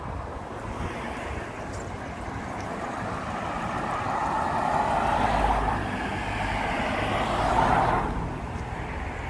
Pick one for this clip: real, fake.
real